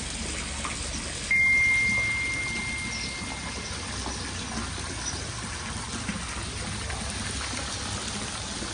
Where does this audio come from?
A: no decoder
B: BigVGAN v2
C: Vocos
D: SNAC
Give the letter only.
A